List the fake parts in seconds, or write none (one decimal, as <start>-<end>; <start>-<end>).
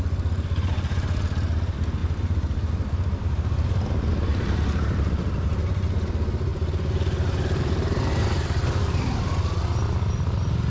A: 2.0-2.7; 4.3-5.1; 6.5-9.3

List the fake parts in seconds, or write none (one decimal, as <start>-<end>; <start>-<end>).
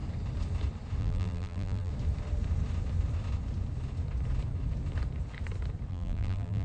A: 1.0-1.9; 5.9-6.6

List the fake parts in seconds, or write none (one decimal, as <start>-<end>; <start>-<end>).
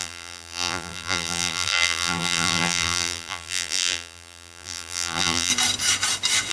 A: 0.0-5.5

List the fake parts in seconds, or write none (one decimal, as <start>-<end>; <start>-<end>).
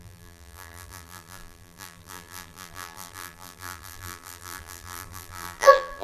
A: 0.0-6.0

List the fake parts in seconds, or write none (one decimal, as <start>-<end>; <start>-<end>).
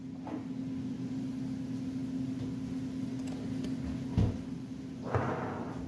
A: none